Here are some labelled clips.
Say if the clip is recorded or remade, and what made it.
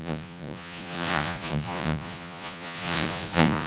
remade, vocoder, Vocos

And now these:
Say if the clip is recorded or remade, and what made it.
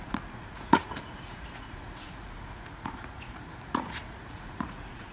remade, vocoder, Vocos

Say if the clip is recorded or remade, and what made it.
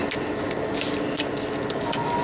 recorded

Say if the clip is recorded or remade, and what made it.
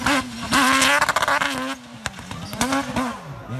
recorded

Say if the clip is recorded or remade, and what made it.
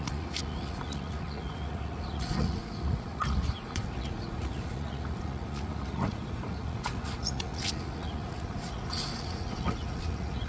remade, vocoder, Vocos